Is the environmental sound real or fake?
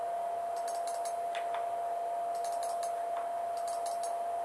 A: real